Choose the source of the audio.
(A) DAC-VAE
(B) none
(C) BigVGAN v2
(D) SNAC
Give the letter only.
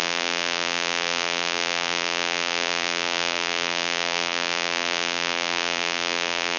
C